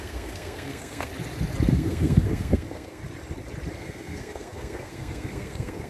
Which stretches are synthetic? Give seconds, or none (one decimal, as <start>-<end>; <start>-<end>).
0.0-1.1; 1.7-3.0; 3.7-5.9